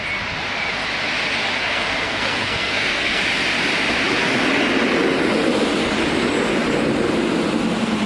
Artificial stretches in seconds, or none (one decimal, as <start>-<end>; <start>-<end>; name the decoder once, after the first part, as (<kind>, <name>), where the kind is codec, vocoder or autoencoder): 1.6-3.2 (codec, SNAC)